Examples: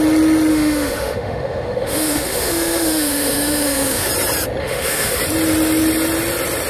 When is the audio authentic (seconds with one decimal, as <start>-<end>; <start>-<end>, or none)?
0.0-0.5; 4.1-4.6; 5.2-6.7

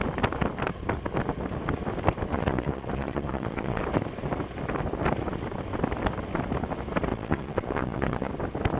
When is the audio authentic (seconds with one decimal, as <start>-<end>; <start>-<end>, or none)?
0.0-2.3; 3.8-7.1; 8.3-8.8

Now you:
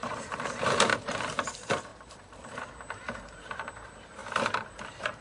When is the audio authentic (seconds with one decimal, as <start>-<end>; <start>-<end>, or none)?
0.9-1.5

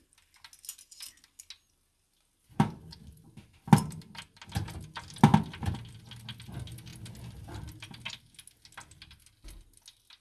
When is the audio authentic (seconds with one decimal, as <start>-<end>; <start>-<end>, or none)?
0.0-10.2

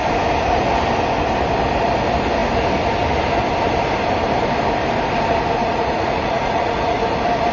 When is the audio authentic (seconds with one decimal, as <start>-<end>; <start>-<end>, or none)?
0.0-5.6; 7.0-7.5

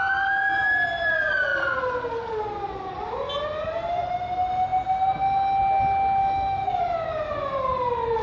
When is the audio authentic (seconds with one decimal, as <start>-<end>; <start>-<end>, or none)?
0.0-6.2; 6.8-8.2